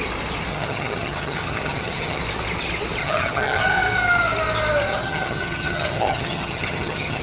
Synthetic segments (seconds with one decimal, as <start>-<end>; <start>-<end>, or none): 0.5-2.2; 3.0-3.6; 4.9-7.2